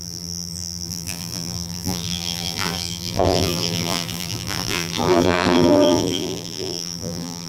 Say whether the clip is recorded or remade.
remade